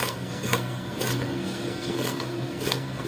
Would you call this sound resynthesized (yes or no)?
yes